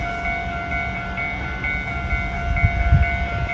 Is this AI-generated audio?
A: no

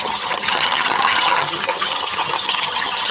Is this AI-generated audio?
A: yes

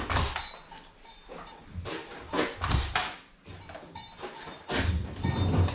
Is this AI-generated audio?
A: yes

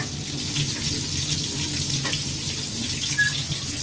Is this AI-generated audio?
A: no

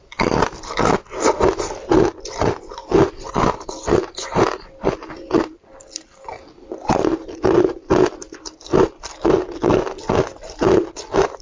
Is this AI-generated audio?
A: no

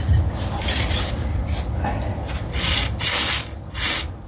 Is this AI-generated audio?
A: no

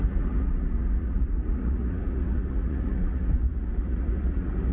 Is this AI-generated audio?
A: yes